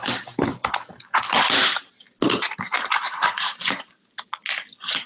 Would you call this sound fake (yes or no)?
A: no